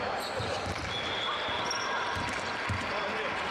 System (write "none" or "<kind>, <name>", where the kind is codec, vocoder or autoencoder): none